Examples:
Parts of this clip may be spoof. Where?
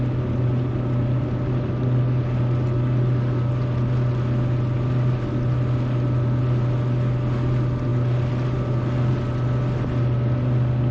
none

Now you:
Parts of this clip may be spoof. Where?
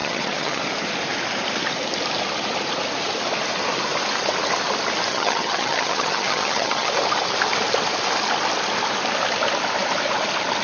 0.0-0.6; 5.1-6.9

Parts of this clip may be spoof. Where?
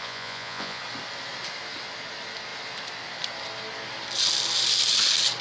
0.0-0.8